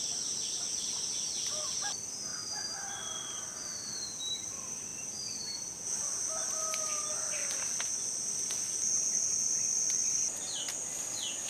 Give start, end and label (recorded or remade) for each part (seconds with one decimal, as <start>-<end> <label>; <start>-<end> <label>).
0.0-11.5 recorded